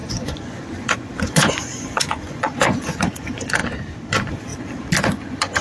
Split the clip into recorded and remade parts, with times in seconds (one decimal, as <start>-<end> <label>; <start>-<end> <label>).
0.0-3.6 remade; 3.6-4.1 recorded; 4.1-4.5 remade; 4.5-5.0 recorded; 5.0-5.6 remade